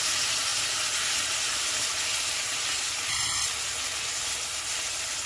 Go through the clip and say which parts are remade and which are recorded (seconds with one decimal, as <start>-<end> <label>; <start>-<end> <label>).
0.0-5.3 recorded